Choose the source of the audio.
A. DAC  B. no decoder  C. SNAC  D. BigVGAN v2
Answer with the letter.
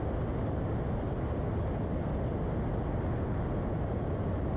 B